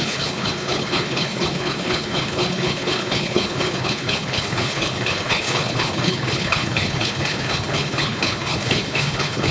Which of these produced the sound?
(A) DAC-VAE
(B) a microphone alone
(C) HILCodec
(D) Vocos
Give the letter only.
C